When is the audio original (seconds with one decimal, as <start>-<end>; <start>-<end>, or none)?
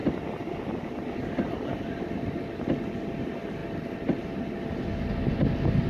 0.0-5.9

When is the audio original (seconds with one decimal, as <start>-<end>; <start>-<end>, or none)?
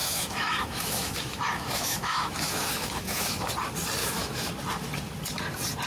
3.5-4.0; 4.5-5.9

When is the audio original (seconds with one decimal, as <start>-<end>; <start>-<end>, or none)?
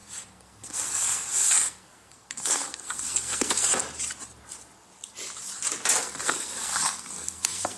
3.7-6.0